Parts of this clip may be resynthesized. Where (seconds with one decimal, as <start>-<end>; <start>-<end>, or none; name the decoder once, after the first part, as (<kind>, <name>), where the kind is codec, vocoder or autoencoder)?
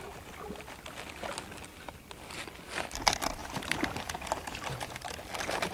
3.4-5.2 (vocoder, BigVGAN v2)